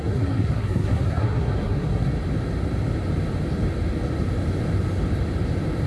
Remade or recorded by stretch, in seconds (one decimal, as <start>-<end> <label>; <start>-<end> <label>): 0.0-2.1 remade; 2.1-5.9 recorded